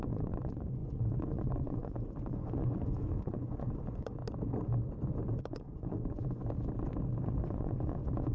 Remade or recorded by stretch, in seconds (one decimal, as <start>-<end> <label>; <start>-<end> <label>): 0.0-4.2 remade; 4.2-5.3 recorded; 5.3-6.4 remade; 6.4-7.2 recorded; 7.2-8.3 remade